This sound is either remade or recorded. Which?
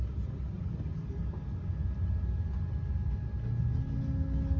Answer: recorded